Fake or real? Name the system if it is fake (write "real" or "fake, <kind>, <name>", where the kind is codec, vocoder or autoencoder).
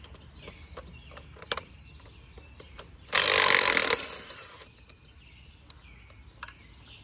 real